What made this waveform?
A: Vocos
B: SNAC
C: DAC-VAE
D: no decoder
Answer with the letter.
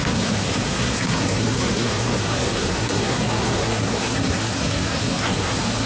B